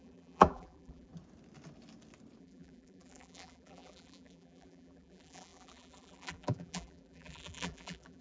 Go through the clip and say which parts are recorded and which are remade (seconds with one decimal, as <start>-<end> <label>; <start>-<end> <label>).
0.0-1.1 remade; 1.1-2.4 recorded; 2.4-8.2 remade